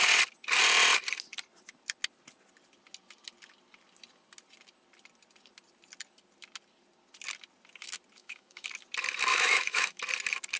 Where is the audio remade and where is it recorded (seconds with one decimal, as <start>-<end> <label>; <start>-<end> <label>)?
0.0-8.2 recorded; 8.2-8.7 remade; 8.7-9.3 recorded; 9.3-10.0 remade; 10.0-10.6 recorded